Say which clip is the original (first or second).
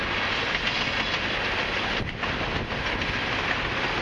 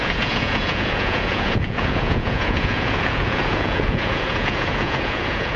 first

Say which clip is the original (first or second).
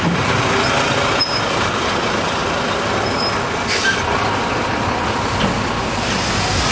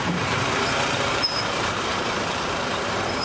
first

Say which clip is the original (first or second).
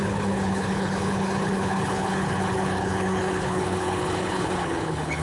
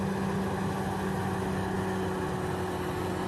second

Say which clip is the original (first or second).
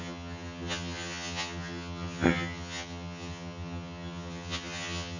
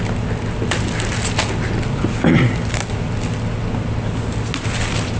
second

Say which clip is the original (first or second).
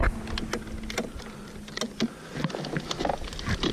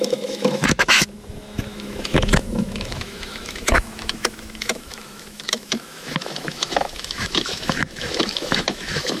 first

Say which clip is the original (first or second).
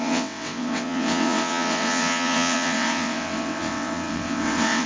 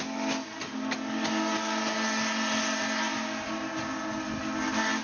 second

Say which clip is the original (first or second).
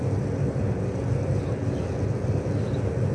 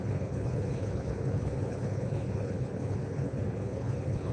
first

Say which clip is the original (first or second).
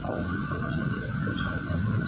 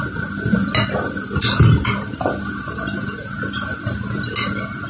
second